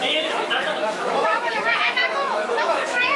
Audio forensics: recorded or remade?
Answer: remade